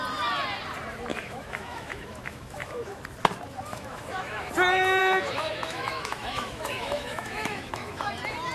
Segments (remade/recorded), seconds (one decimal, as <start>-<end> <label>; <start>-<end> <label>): 0.0-1.1 recorded; 1.1-3.0 remade; 3.0-3.7 recorded; 3.7-4.5 remade; 4.5-5.0 recorded; 5.0-8.1 remade; 8.1-8.5 recorded